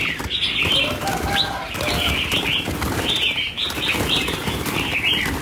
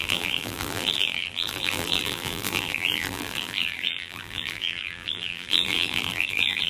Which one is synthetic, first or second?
second